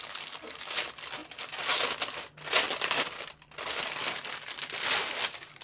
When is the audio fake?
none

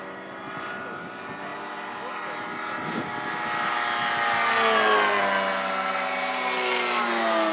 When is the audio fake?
none

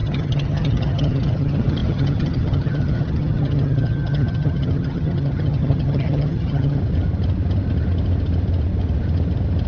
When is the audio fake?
0.0-6.8 (vocoder, HiFi-GAN)

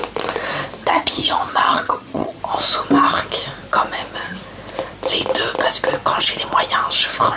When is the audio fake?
0.9-2.4 (vocoder, HiFi-GAN)